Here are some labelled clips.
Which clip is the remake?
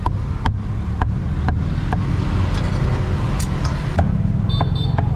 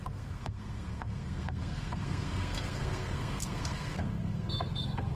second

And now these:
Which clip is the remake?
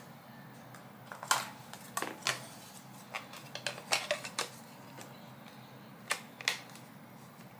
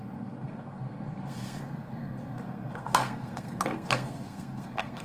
second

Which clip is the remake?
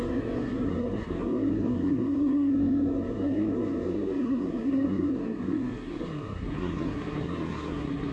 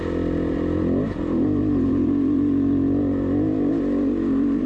first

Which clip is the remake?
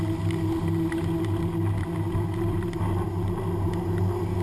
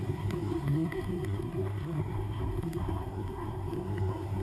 second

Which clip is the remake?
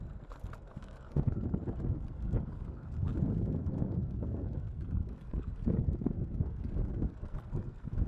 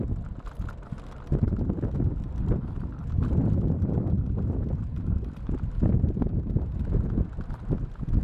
first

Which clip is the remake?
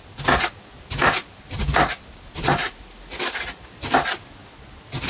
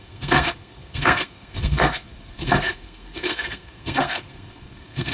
second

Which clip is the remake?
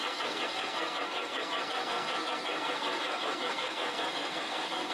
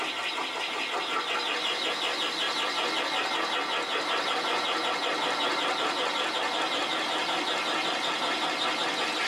first